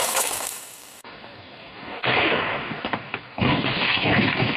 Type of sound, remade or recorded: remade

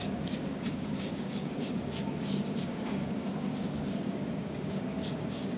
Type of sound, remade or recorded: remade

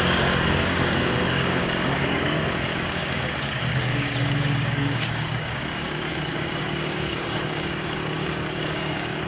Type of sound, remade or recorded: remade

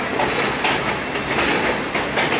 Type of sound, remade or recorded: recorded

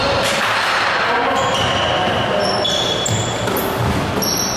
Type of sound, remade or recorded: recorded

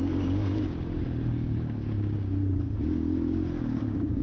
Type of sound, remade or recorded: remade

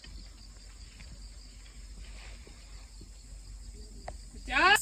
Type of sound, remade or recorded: recorded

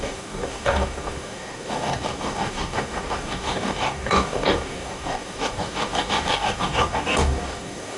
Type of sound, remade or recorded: remade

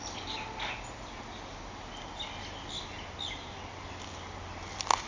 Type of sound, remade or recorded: recorded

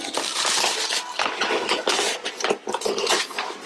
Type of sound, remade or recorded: recorded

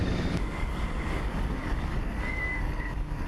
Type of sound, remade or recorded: remade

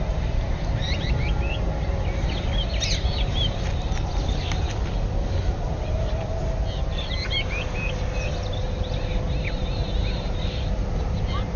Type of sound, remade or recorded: recorded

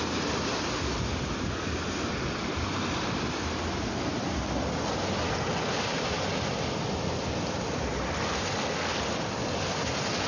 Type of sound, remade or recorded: recorded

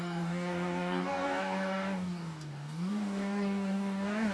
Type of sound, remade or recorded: remade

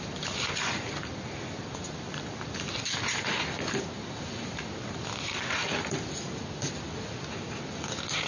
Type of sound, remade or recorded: recorded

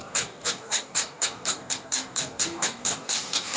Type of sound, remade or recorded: remade